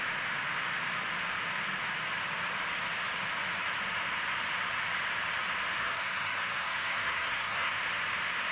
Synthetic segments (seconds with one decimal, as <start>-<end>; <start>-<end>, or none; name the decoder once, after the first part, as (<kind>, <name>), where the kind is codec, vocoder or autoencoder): 5.8-7.7 (codec, SNAC)